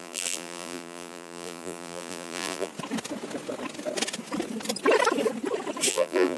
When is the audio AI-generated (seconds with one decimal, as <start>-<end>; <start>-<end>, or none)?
0.0-2.7; 5.9-6.4